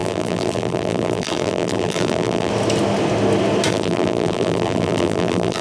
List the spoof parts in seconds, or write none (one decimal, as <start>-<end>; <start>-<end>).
0.0-2.5; 3.7-5.6